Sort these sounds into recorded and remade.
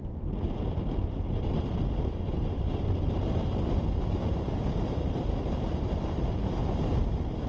recorded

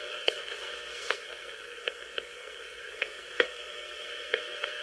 remade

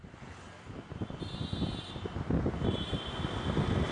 recorded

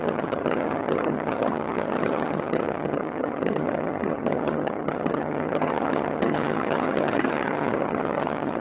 remade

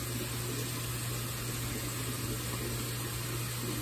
recorded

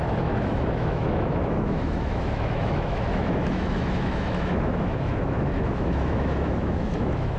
remade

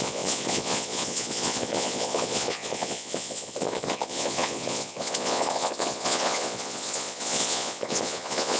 remade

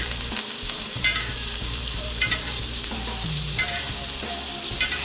remade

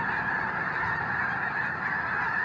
recorded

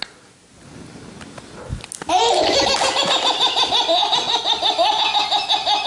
recorded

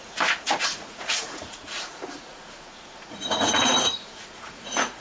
remade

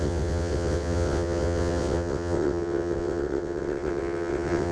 remade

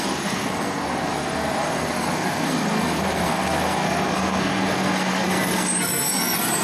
remade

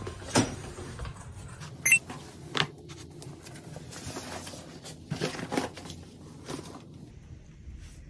recorded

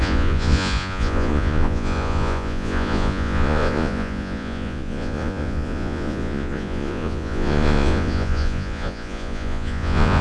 remade